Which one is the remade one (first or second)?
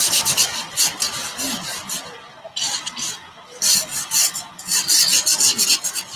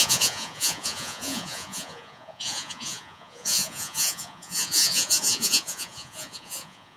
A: second